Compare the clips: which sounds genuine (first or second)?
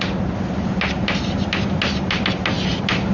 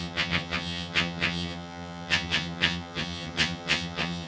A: first